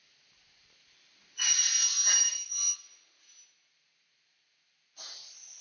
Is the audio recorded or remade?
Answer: recorded